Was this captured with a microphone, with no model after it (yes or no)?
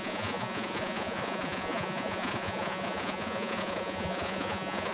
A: no